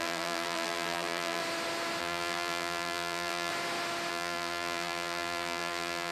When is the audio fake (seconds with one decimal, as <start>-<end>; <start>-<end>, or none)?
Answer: 0.0-1.4; 2.0-3.5; 4.1-6.1